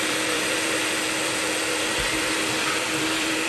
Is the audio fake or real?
fake